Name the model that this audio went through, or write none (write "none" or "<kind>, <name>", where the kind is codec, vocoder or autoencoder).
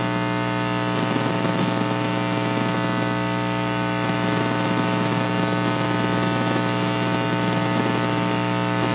autoencoder, DAC-VAE